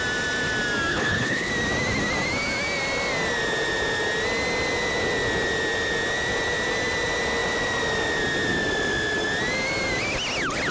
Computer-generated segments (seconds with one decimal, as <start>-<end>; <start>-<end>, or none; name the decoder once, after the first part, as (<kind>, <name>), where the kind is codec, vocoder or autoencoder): 0.9-1.5 (codec, HILCodec)

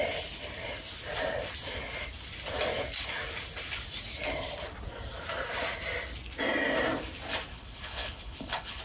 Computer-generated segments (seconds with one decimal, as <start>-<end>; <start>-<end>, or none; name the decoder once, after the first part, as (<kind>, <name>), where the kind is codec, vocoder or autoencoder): 7.5-8.8 (codec, HILCodec)

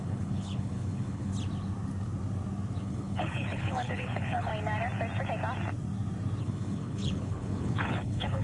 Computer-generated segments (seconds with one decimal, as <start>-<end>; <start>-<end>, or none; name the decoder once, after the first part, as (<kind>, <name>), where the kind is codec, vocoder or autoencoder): 0.0-1.3 (codec, HILCodec); 2.8-4.5; 6.4-8.4